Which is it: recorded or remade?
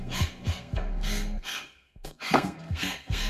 remade